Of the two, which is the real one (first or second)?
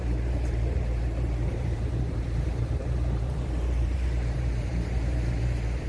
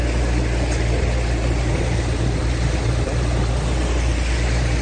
second